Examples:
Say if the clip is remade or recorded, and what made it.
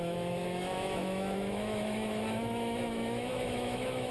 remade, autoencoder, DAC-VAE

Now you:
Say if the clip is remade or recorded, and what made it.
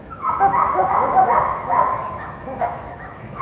remade, autoencoder, DAC-VAE